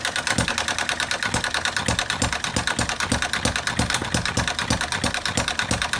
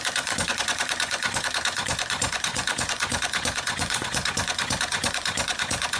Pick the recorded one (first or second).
first